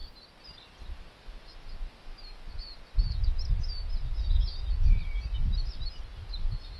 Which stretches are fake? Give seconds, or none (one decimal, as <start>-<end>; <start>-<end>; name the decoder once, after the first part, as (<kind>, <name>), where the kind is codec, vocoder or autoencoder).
none